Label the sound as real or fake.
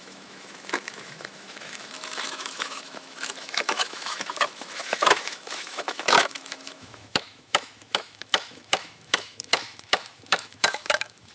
fake